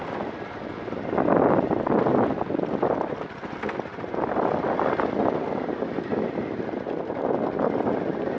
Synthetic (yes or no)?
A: no